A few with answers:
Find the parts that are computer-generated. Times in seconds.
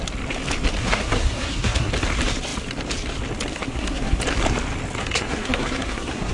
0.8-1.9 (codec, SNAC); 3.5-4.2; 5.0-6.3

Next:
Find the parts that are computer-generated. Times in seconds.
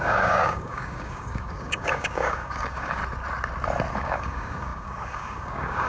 0.0-3.0 (codec, DAC); 3.9-5.9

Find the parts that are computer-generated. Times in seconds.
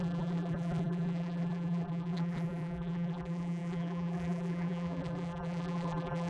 0.0-6.3 (vocoder, BigVGAN v2)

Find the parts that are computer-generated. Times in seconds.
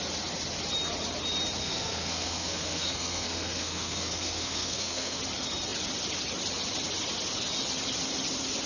1.6-5.2 (codec, SNAC)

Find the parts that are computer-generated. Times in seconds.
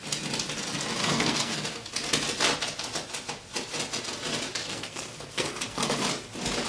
1.0-1.9 (codec, SNAC); 4.6-6.0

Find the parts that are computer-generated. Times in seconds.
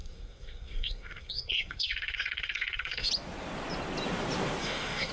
0.0-3.1 (codec, SNAC); 4.6-5.1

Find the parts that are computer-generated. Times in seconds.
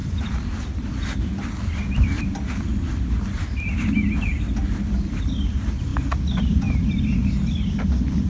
none